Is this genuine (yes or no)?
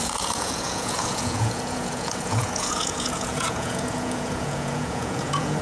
no